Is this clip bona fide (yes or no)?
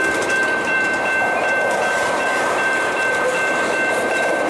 no